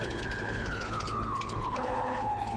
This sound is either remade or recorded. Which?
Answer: remade